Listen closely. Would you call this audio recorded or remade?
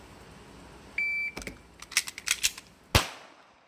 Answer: recorded